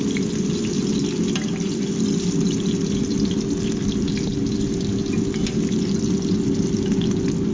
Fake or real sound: real